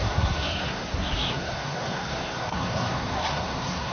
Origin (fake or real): fake